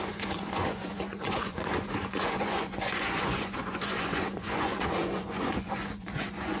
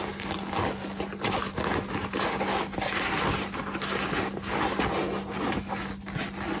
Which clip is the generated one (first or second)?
first